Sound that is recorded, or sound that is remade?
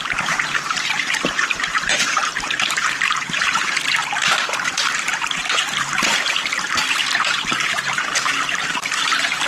remade